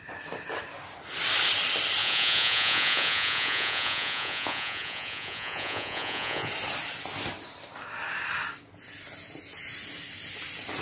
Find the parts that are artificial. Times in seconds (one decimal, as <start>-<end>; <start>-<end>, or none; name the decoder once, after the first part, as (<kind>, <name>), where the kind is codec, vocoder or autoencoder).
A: 2.0-6.5 (vocoder, Vocos)